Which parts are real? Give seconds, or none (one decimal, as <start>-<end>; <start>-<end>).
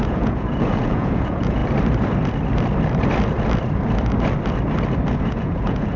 1.6-5.2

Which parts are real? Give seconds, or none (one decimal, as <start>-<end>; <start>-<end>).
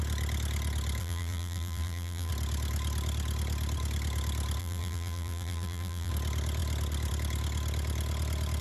0.0-1.0; 2.3-4.6; 6.1-8.6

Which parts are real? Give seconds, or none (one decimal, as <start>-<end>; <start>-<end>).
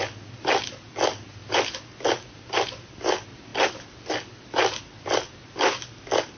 0.0-6.4